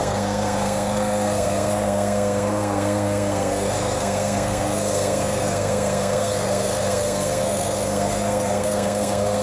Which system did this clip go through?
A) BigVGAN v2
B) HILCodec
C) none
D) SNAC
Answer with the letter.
D